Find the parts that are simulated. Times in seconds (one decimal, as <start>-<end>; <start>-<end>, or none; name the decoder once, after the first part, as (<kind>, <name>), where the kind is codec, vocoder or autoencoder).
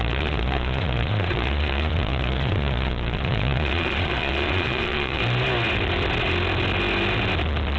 0.0-5.2 (vocoder, Vocos)